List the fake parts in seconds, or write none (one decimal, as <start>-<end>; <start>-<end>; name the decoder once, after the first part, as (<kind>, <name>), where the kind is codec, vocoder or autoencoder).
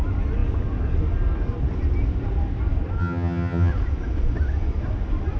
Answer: 3.0-3.7 (vocoder, HiFi-GAN)